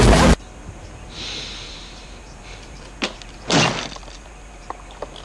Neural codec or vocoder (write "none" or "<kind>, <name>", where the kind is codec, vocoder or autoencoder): none